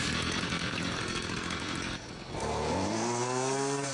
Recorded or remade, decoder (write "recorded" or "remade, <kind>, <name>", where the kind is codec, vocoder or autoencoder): remade, codec, SNAC